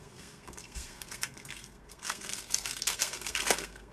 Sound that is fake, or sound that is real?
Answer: fake